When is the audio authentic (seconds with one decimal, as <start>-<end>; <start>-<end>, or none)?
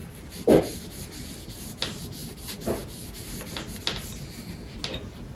0.0-5.3